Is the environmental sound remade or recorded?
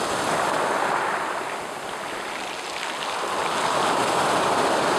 recorded